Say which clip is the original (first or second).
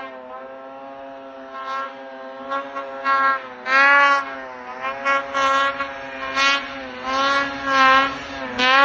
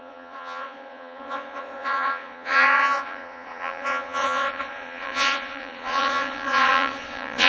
first